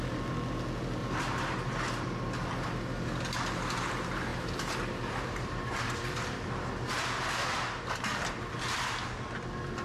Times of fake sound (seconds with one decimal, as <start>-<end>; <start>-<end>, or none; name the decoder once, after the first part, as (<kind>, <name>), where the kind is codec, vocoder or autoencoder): 1.0-2.2 (vocoder, BigVGAN v2); 4.3-6.5